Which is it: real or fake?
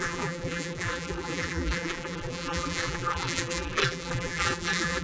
fake